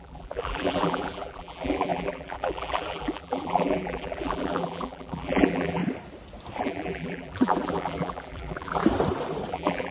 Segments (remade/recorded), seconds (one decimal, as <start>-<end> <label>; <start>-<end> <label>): 0.0-5.8 remade; 5.8-6.6 recorded; 6.6-8.8 remade; 8.8-9.5 recorded; 9.5-9.9 remade